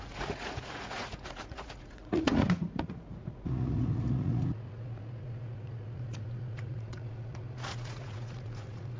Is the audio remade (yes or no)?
yes